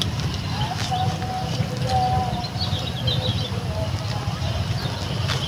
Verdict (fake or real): real